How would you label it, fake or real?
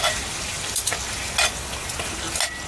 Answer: real